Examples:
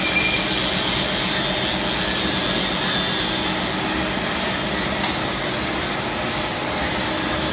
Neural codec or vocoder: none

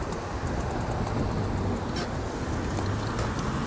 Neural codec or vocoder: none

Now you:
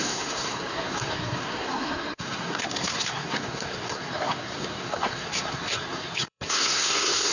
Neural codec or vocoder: codec, SNAC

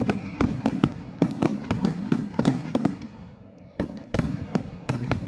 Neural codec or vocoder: codec, SNAC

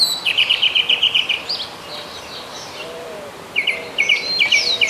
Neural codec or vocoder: none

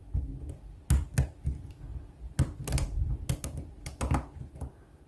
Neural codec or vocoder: none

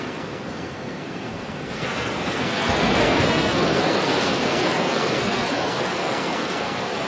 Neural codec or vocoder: codec, SNAC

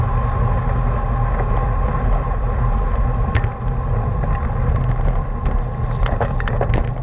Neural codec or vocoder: none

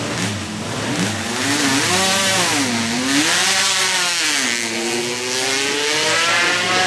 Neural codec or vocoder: none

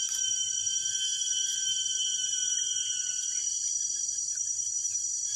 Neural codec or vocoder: none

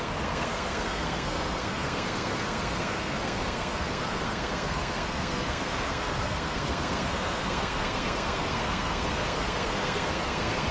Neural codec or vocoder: codec, SNAC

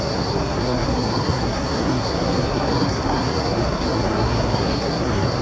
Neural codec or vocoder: codec, SNAC